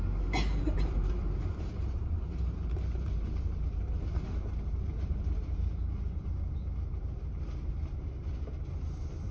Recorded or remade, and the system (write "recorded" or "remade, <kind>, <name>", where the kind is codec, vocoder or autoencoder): remade, vocoder, BigVGAN v2